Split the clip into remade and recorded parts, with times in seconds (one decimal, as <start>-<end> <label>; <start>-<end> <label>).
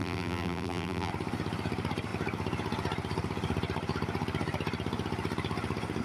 0.0-1.1 remade; 1.1-6.0 recorded